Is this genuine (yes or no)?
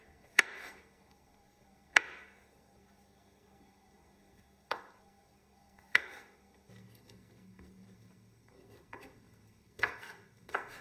no